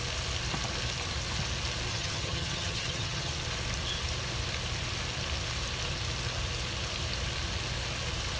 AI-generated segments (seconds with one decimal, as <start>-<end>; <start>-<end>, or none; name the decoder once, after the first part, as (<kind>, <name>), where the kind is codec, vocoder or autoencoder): 1.9-3.3 (vocoder, HiFi-GAN)